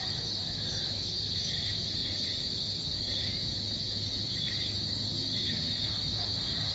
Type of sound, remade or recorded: remade